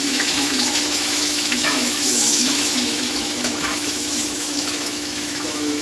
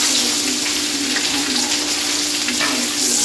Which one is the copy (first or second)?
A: first